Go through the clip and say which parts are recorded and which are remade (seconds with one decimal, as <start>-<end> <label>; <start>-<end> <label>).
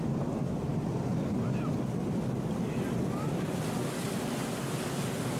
0.0-5.4 recorded